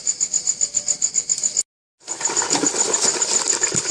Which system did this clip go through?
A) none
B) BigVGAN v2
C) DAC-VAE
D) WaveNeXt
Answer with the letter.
A